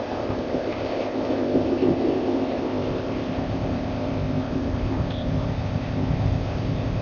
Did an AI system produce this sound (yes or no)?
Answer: yes